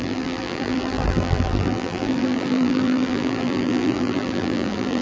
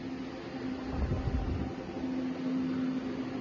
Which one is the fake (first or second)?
first